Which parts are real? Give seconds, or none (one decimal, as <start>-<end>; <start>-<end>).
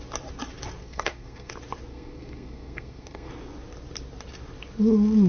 0.0-0.8; 1.5-1.9; 3.3-5.3